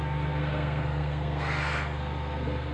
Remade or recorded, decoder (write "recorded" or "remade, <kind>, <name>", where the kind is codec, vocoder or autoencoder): remade, codec, SNAC